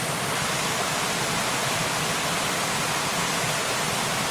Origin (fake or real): real